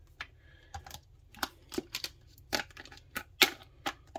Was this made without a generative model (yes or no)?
yes